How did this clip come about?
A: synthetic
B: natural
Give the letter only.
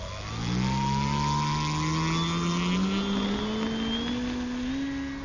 B